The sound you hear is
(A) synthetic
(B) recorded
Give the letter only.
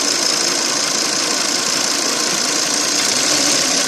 B